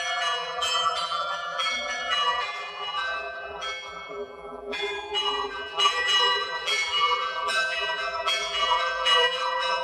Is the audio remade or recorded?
remade